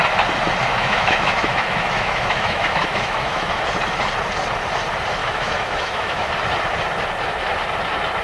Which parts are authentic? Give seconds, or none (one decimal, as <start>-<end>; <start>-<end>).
0.0-0.7; 3.6-5.2; 6.3-8.2